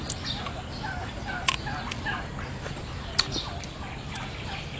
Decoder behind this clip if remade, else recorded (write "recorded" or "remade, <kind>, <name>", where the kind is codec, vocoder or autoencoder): recorded